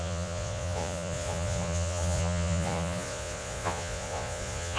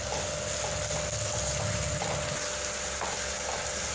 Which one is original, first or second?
second